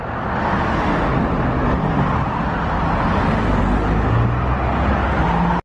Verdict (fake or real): real